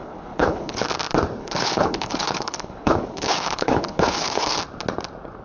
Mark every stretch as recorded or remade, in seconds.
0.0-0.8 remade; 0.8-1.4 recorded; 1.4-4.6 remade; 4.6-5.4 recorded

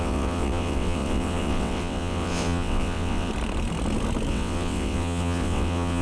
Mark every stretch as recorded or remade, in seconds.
0.0-3.3 remade; 3.3-4.3 recorded; 4.3-6.0 remade

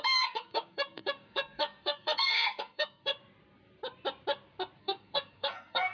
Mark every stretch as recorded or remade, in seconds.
0.0-3.1 remade; 3.1-4.8 recorded; 4.8-5.9 remade

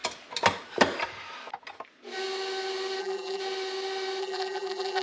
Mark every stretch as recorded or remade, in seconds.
0.0-3.0 recorded; 3.0-3.4 remade; 3.4-4.2 recorded; 4.2-5.0 remade

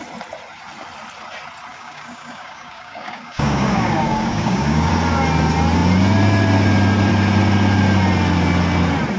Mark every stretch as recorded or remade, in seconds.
0.0-1.7 recorded; 1.7-4.9 remade; 4.9-9.2 recorded

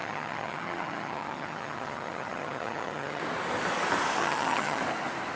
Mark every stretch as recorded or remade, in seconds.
0.0-3.2 remade; 3.2-4.2 recorded; 4.2-4.8 remade; 4.8-5.4 recorded